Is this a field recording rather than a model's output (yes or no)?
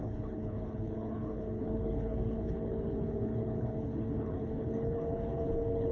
no